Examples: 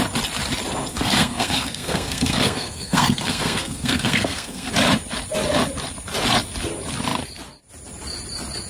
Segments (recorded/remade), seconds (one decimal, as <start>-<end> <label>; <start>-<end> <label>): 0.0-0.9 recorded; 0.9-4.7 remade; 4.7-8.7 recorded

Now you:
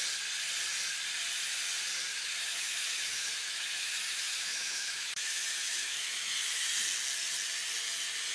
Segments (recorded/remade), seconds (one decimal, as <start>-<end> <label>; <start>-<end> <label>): 0.0-2.1 recorded; 2.1-6.7 remade; 6.7-8.3 recorded

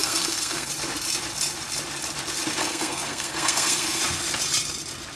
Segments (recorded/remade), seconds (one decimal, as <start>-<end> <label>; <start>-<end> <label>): 0.0-0.7 remade; 0.7-2.6 recorded; 2.6-4.0 remade; 4.0-5.1 recorded

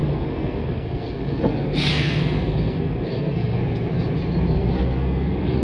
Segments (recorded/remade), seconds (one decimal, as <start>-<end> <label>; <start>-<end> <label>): 0.0-3.6 remade; 3.6-4.5 recorded; 4.5-5.6 remade

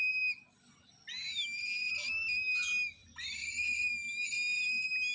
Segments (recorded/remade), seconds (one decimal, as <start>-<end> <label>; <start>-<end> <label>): 0.0-3.0 recorded; 3.0-3.9 remade; 3.9-5.1 recorded

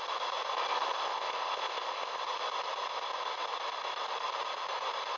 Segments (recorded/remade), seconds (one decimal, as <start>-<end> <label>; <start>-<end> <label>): 0.0-1.0 recorded; 1.0-2.2 remade; 2.2-5.2 recorded

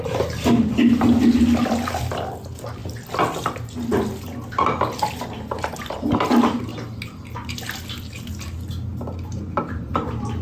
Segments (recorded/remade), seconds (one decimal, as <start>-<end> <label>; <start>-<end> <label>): 0.0-10.4 recorded